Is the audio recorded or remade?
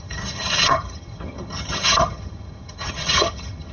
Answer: remade